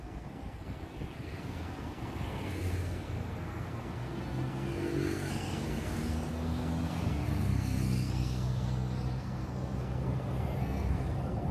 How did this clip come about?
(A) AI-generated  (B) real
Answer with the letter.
A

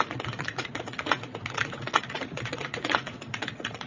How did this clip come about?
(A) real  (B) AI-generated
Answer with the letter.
B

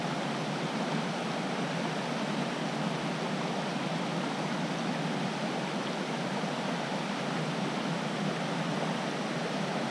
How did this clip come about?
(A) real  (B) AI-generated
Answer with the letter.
A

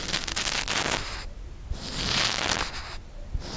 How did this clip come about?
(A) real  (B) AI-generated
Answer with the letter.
A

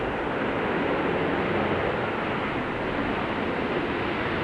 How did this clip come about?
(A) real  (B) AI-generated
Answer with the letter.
A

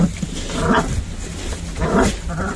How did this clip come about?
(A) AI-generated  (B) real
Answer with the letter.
B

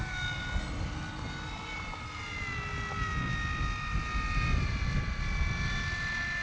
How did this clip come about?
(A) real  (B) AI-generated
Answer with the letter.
A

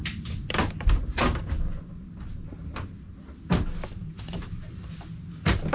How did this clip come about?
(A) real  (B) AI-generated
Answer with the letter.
A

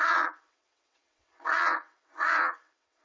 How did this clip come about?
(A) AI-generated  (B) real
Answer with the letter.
A